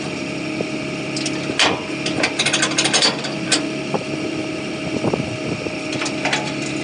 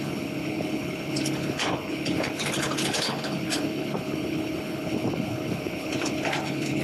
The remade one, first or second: second